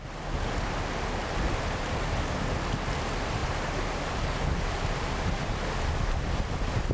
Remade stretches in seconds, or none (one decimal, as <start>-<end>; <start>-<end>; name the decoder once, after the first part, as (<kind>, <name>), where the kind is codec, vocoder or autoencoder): none

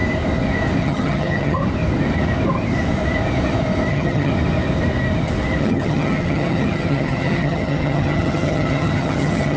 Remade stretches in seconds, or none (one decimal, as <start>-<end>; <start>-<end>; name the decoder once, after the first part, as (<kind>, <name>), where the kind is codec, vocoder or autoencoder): 0.8-1.6 (vocoder, HiFi-GAN); 3.9-4.3; 5.6-9.6